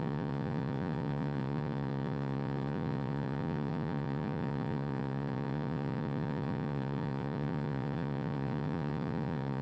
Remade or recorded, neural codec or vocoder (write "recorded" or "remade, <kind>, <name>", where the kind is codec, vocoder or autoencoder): remade, vocoder, Vocos